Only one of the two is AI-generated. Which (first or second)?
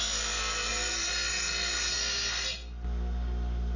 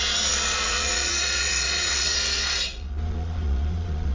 second